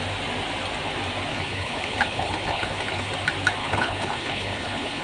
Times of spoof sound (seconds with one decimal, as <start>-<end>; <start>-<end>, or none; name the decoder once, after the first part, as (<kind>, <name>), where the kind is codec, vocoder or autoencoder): 1.3-3.1 (codec, HILCodec); 3.6-5.0